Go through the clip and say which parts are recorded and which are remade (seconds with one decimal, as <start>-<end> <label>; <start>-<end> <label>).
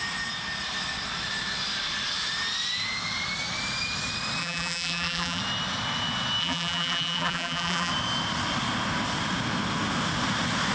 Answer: 0.0-4.4 recorded; 4.4-5.4 remade; 5.4-6.4 recorded; 6.4-7.9 remade; 7.9-10.7 recorded